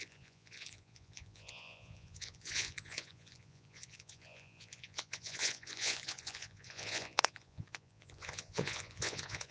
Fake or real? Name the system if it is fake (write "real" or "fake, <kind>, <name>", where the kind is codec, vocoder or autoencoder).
fake, vocoder, Vocos